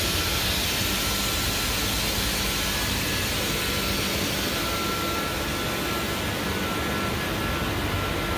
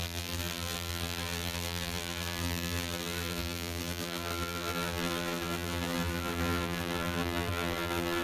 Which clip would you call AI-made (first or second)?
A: second